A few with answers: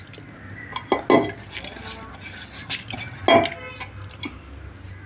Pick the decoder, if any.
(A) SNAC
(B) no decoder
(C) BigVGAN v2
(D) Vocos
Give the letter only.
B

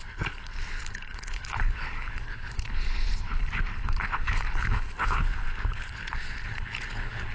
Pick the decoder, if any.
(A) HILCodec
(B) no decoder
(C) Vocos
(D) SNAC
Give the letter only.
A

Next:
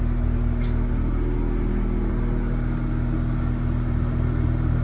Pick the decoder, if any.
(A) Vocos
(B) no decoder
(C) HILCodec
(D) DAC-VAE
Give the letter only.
B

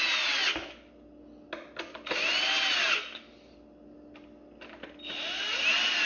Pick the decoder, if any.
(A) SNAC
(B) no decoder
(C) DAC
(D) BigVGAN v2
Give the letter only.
B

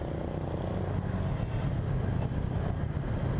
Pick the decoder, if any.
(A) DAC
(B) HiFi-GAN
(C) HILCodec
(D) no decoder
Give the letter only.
D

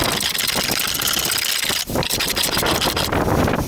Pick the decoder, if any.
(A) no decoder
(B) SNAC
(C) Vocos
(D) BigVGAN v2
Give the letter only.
A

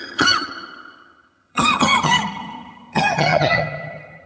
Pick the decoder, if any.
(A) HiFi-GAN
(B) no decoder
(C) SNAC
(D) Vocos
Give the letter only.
A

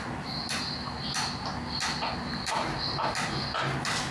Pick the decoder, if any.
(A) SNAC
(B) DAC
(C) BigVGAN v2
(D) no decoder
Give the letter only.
D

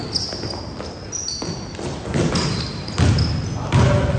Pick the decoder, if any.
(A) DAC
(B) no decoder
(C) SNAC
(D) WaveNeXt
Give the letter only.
B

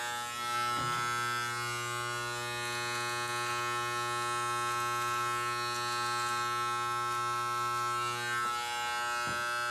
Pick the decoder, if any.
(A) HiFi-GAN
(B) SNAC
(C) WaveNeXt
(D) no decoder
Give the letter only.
D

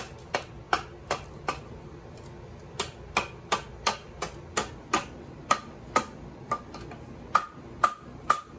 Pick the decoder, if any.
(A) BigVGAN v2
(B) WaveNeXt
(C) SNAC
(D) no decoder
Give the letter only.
D